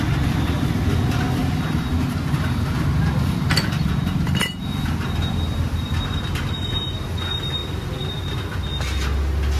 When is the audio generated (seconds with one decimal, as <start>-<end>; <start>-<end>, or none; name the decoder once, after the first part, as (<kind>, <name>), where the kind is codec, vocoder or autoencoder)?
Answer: 1.4-2.7 (vocoder, BigVGAN v2)